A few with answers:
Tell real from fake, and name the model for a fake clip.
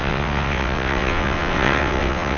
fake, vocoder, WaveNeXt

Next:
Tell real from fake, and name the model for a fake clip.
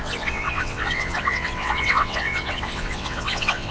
fake, vocoder, WaveNeXt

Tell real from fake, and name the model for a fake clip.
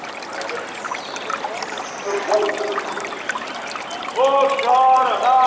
real